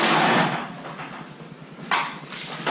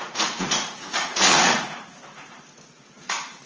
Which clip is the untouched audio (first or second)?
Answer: first